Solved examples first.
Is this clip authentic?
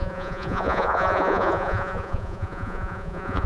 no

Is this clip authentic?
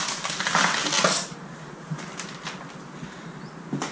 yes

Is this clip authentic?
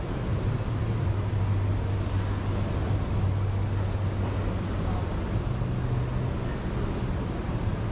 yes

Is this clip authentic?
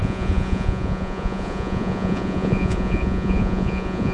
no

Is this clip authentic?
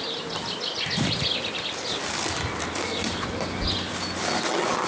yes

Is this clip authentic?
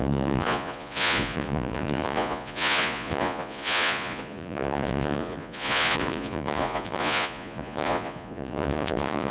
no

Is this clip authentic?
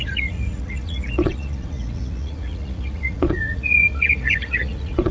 no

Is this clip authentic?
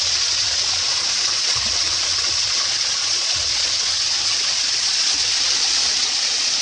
no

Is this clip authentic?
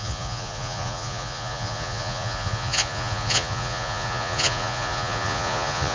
no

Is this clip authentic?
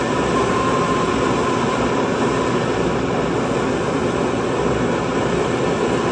yes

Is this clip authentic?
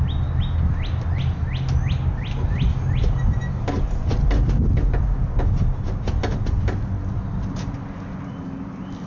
yes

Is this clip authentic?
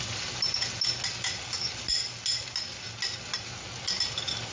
yes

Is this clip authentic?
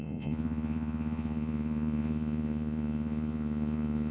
no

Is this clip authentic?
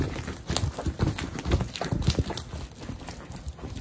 yes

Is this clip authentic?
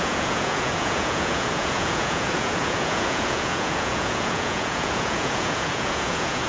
no